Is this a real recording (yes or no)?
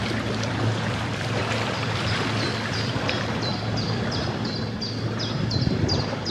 no